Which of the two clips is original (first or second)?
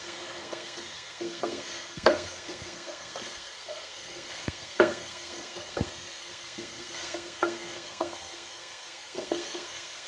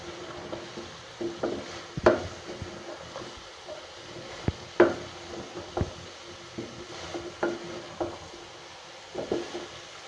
second